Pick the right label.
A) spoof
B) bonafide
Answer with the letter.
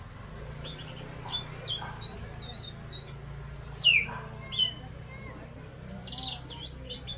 B